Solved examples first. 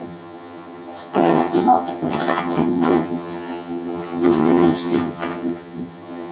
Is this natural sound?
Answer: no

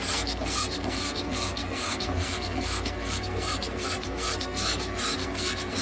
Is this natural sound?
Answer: no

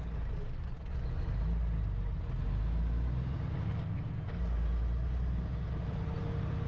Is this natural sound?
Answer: yes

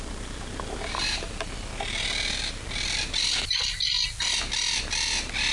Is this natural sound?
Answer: yes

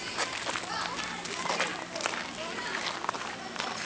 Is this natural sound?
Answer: yes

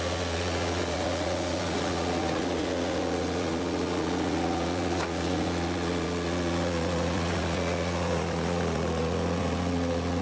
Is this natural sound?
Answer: no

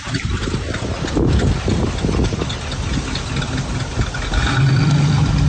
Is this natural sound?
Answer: yes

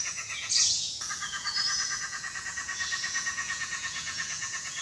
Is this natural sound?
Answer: no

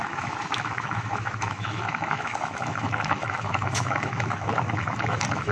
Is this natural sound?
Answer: no